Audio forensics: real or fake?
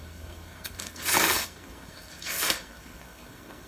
fake